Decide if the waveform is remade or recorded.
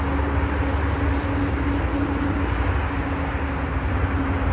recorded